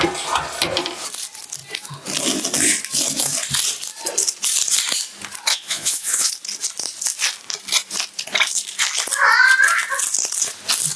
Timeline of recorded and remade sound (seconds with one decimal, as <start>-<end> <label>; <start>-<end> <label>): 0.0-5.5 recorded; 5.5-6.3 remade; 6.3-11.0 recorded